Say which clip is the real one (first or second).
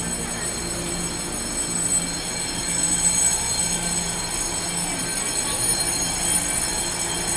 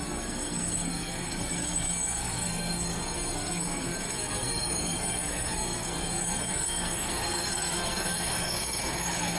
first